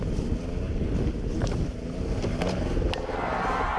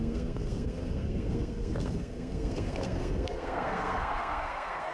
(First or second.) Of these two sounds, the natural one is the first